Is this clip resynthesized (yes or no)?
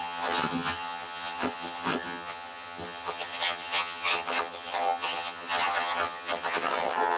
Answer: yes